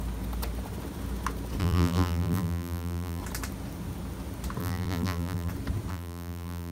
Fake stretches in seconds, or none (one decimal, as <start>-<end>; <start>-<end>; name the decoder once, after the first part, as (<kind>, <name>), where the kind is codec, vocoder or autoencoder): 1.6-3.2 (vocoder, BigVGAN v2); 4.6-5.5; 5.9-6.7